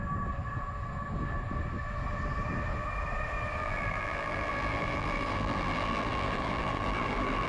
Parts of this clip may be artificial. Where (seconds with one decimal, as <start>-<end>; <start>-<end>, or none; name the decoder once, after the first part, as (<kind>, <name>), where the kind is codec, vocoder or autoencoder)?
3.6-7.5 (vocoder, BigVGAN v2)